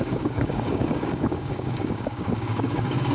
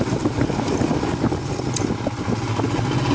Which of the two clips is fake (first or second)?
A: first